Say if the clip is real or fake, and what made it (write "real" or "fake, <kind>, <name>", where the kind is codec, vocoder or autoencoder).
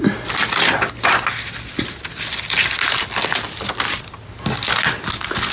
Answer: real